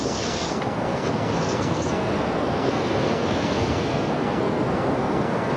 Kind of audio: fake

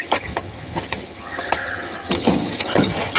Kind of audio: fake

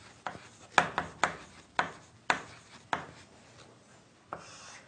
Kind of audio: real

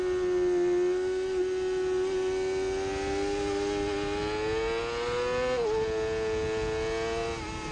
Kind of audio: real